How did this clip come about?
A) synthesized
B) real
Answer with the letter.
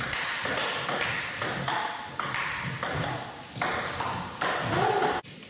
B